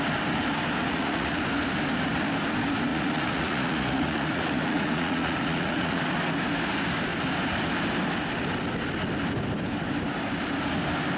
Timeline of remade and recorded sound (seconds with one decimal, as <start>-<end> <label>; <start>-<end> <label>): 0.0-0.8 recorded; 0.8-1.4 remade; 1.4-2.9 recorded; 2.9-6.0 remade; 6.0-11.2 recorded